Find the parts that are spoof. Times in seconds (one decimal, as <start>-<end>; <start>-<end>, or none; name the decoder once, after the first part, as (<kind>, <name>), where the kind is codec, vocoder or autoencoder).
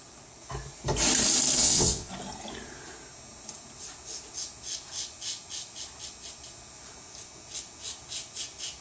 1.6-2.1 (vocoder, WaveNeXt)